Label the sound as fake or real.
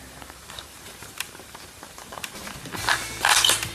fake